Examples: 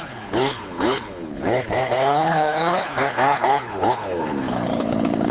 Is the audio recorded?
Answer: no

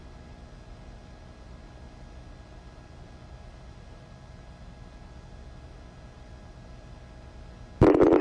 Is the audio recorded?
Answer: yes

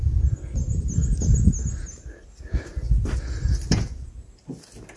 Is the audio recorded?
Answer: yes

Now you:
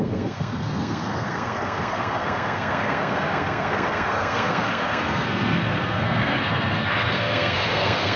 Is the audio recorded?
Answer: no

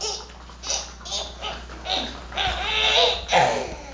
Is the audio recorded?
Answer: yes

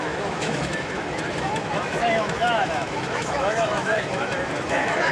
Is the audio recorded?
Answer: no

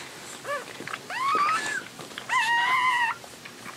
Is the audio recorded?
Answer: yes